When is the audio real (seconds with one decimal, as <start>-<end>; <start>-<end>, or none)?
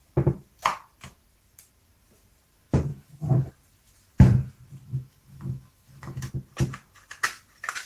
0.0-2.9; 3.5-4.9; 6.3-7.9